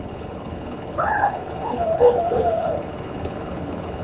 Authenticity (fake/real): fake